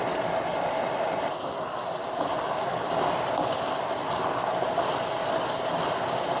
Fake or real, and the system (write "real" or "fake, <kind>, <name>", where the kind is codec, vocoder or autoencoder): real